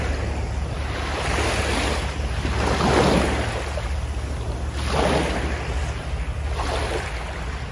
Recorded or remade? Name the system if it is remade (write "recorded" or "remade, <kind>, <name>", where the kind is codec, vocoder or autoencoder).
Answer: recorded